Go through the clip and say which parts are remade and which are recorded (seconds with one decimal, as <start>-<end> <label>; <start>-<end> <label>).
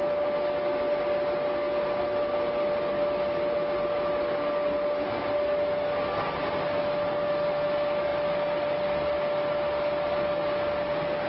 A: 0.0-11.3 recorded